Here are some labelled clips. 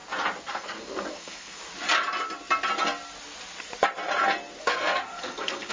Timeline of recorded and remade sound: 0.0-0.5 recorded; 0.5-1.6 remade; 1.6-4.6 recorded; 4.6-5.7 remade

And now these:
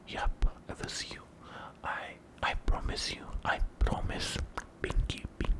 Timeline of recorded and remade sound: 0.0-5.6 recorded